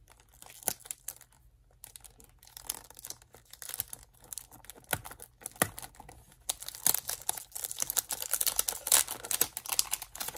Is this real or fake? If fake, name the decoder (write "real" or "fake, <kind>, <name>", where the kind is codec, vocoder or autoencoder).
real